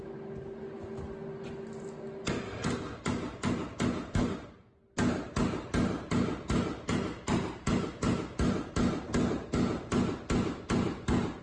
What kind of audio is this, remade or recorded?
recorded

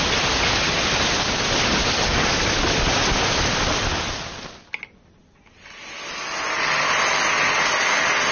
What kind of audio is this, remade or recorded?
recorded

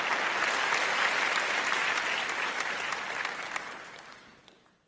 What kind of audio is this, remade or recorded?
recorded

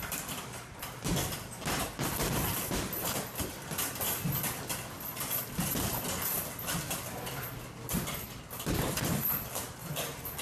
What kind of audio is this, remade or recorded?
recorded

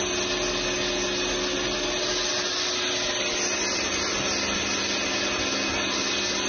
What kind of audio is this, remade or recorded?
recorded